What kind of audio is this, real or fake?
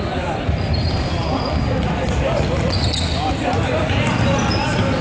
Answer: real